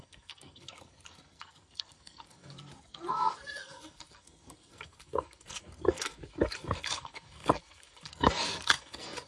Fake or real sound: fake